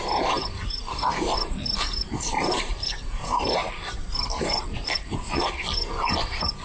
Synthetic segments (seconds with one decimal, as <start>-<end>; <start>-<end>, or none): 0.0-6.6